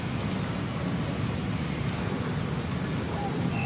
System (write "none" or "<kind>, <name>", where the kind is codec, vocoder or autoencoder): none